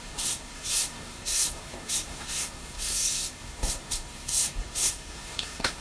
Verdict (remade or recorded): remade